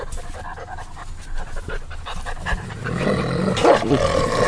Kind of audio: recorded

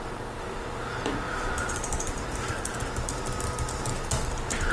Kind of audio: recorded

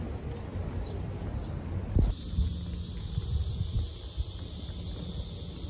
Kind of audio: recorded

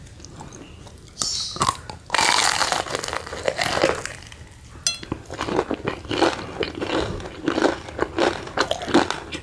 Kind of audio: recorded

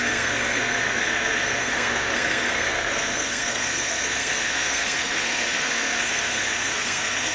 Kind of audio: remade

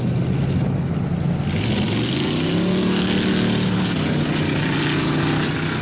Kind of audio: recorded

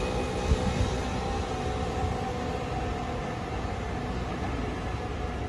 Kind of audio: recorded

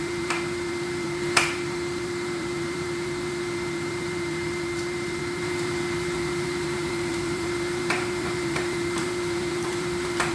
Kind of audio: remade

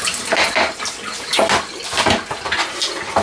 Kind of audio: recorded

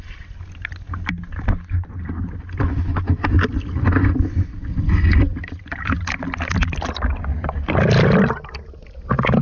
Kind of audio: recorded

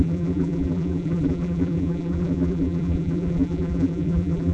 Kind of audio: remade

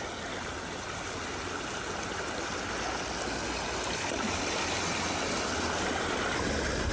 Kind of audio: recorded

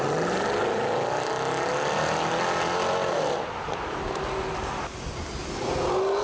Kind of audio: recorded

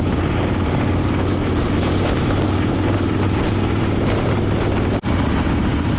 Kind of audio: recorded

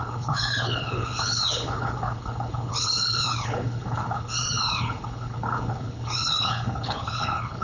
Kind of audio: remade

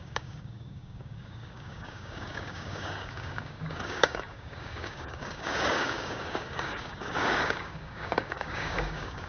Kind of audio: remade